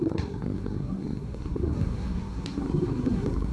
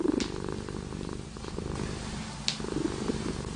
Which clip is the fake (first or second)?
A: first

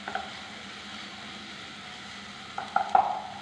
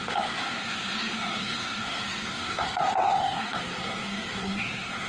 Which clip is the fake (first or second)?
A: second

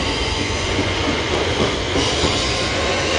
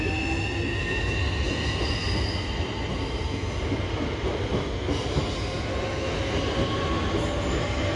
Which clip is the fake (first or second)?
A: first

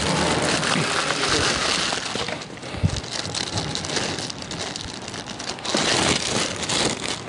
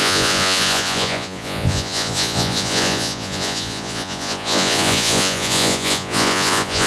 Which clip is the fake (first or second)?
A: second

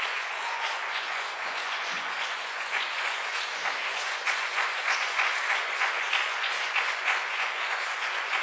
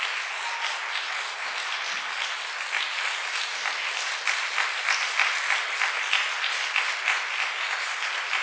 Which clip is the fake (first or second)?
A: first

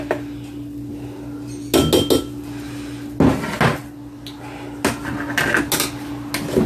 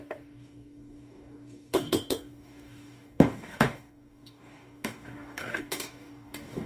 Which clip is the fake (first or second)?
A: second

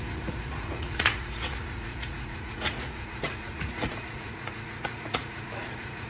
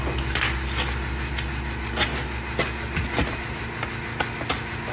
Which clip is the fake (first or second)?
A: first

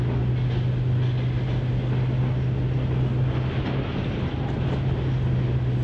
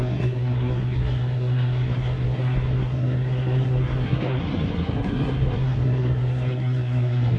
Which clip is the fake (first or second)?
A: second